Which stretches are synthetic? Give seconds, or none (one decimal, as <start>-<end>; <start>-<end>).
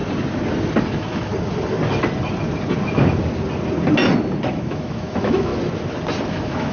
0.9-1.3; 4.5-5.5; 6.3-6.7